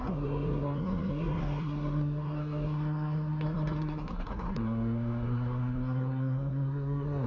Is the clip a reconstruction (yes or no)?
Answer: yes